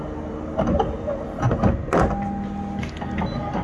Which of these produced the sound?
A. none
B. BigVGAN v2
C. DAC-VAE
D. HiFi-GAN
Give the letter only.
A